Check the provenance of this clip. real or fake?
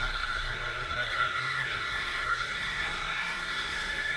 fake